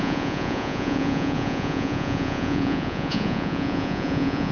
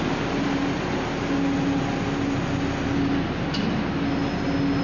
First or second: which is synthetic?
first